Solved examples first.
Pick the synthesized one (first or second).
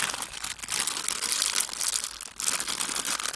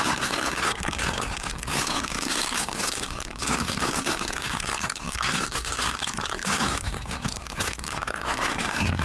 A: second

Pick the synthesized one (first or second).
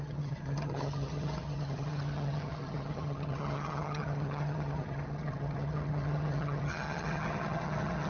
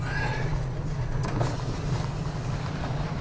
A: first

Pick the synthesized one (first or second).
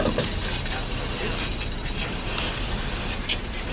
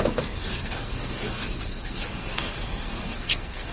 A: second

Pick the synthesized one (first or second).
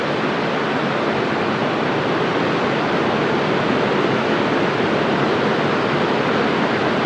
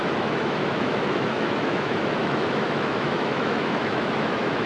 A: second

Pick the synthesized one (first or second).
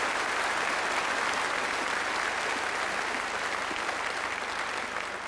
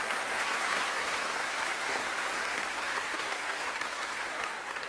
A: second